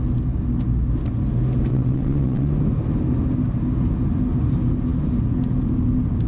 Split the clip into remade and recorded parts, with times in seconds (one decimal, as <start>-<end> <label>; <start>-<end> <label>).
0.0-1.7 recorded; 1.7-2.5 remade; 2.5-6.3 recorded